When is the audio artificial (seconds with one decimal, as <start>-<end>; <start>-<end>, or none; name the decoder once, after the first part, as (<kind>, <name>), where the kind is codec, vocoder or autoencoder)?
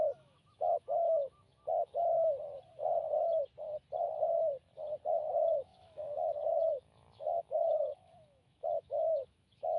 0.0-2.2 (autoencoder, DAC-VAE); 5.1-9.8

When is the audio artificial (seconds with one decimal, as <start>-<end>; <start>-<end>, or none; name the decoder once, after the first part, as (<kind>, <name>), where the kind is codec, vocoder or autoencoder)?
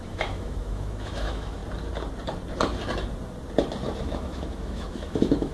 0.0-1.6 (autoencoder, DAC-VAE); 4.0-5.5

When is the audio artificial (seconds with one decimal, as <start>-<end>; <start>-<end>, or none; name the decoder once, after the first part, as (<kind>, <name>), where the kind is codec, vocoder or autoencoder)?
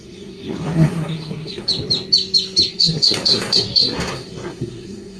0.0-1.7 (codec, SNAC); 2.7-5.2